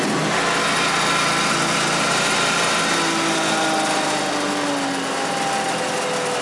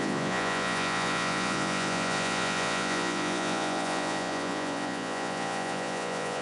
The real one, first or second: first